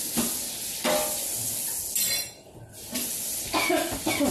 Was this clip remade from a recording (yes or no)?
no